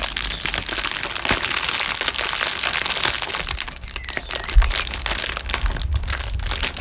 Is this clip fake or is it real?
real